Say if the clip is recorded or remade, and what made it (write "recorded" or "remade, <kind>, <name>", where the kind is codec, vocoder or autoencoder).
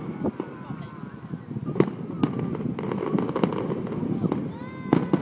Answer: recorded